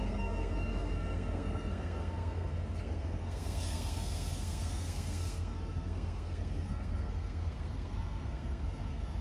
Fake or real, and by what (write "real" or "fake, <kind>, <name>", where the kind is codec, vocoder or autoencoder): fake, codec, SNAC